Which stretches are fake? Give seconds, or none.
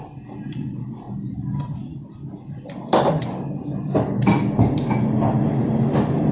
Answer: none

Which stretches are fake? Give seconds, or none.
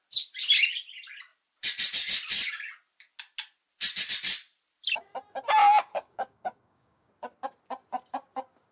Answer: 5.9-7.1 (codec, DAC)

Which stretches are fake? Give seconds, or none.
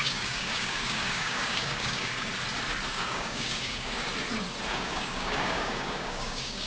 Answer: 0.0-2.3 (codec, DAC); 2.9-4.1; 4.7-6.7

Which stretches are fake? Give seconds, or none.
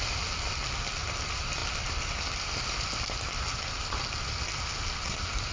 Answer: none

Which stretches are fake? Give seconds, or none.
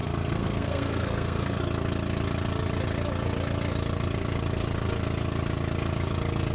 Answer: 0.0-1.6 (codec, SNAC)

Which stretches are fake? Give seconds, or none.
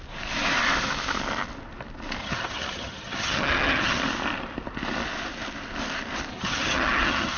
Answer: 2.2-4.0 (vocoder, HiFi-GAN); 6.3-7.4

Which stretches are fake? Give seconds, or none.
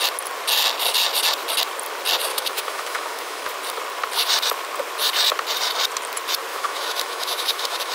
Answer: 2.3-3.5 (autoencoder, DAC-VAE); 6.5-7.9